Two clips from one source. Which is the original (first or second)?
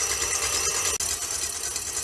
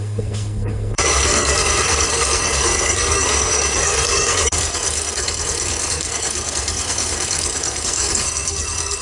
first